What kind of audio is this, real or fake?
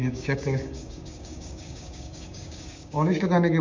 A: fake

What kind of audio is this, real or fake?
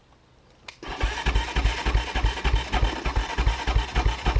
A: real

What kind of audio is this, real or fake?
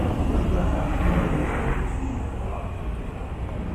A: real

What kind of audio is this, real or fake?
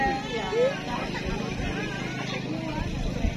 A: real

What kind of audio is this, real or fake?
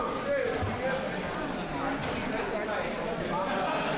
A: real